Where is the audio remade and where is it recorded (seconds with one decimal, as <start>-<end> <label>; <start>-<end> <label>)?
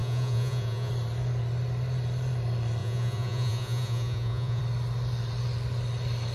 0.0-0.9 remade; 0.9-2.8 recorded; 2.8-4.6 remade; 4.6-6.3 recorded